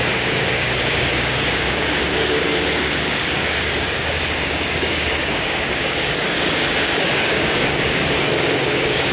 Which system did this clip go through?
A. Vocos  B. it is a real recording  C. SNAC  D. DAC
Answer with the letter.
D